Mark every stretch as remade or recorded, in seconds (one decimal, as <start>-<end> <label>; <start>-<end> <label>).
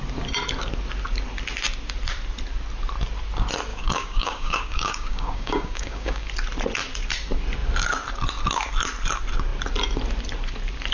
0.0-3.7 recorded; 3.7-6.3 remade; 6.3-10.9 recorded